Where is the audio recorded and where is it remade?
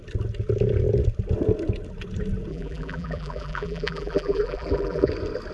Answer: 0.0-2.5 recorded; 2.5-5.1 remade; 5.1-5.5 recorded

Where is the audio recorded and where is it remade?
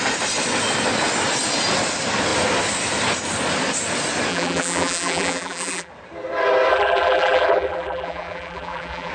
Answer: 0.0-4.3 recorded; 4.3-5.9 remade; 5.9-6.7 recorded; 6.7-9.1 remade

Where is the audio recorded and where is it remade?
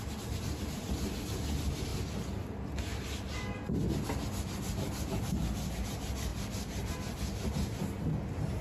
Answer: 0.0-6.3 recorded; 6.3-6.9 remade; 6.9-8.6 recorded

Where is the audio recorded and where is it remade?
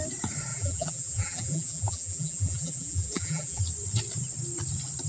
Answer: 0.0-0.5 recorded; 0.5-3.6 remade; 3.6-5.1 recorded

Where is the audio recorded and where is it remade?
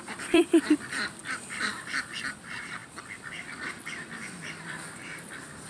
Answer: 0.0-5.7 remade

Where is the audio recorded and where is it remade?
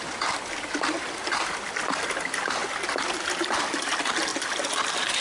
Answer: 0.0-5.2 recorded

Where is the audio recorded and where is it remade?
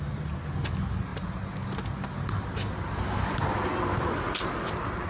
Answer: 0.0-5.1 recorded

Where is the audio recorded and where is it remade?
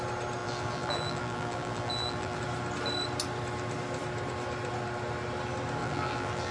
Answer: 0.0-0.4 recorded; 0.4-2.4 remade; 2.4-5.8 recorded; 5.8-6.5 remade